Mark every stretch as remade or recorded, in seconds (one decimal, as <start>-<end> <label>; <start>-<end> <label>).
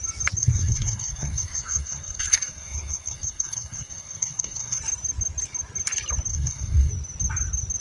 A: 0.0-0.4 recorded; 0.4-4.8 remade; 4.8-6.3 recorded; 6.3-6.9 remade; 6.9-7.8 recorded